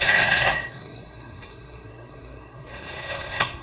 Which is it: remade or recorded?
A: remade